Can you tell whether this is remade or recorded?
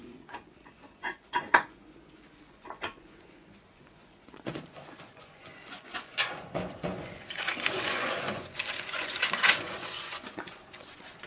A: remade